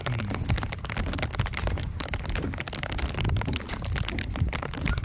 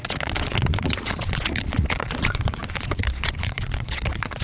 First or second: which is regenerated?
second